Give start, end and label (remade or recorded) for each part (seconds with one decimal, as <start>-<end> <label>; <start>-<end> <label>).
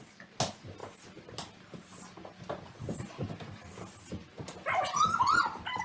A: 0.0-5.8 recorded